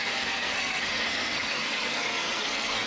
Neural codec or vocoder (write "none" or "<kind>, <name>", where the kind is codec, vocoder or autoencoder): codec, SNAC